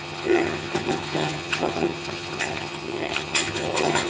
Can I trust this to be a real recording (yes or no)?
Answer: no